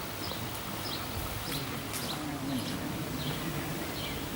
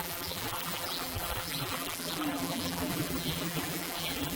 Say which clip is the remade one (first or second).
second